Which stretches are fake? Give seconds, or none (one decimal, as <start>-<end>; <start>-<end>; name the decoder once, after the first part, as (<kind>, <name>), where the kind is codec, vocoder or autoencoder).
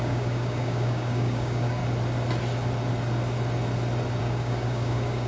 0.0-1.8 (codec, DAC); 4.2-5.3